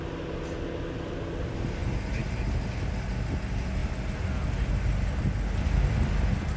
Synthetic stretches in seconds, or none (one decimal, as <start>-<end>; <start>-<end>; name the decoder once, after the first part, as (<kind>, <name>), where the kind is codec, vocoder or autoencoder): 1.8-2.4 (vocoder, BigVGAN v2)